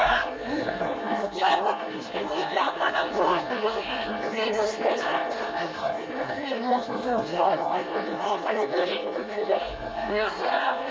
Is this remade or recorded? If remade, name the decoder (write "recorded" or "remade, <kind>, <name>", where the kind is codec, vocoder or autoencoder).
remade, codec, SNAC